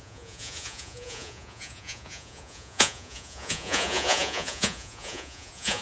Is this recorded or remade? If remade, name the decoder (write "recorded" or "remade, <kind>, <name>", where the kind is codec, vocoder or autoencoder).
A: remade, vocoder, Vocos